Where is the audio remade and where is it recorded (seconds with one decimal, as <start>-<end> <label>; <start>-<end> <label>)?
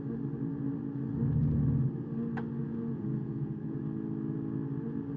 0.0-2.6 recorded; 2.6-3.8 remade; 3.8-5.2 recorded